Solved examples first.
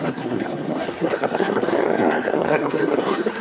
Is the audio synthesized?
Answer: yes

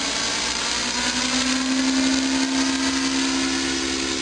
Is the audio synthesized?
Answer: no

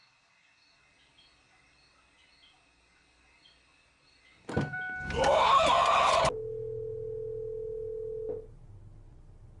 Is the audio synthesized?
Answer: no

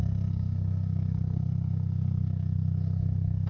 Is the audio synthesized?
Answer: yes